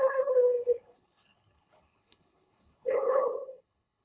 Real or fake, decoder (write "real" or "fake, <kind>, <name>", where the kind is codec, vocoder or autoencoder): fake, codec, HILCodec